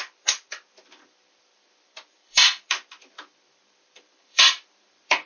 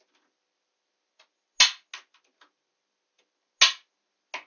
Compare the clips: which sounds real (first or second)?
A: second